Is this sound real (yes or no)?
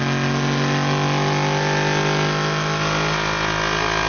yes